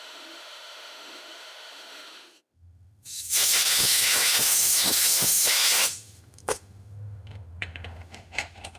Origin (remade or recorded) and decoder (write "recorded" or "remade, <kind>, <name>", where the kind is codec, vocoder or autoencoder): remade, autoencoder, DAC-VAE